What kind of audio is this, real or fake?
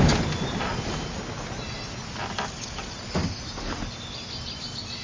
real